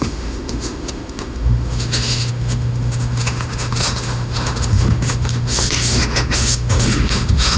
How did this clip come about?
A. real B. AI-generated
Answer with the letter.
B